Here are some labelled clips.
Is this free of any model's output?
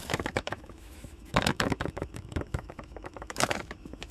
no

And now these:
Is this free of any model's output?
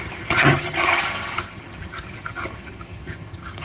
no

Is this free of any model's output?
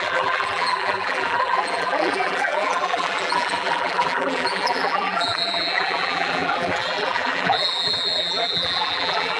no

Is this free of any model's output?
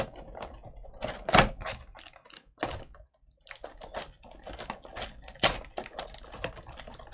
yes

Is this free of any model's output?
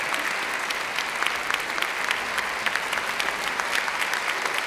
yes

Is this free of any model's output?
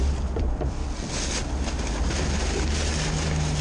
yes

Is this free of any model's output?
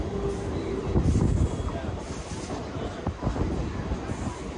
yes